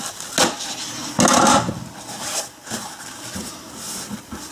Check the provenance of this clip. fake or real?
real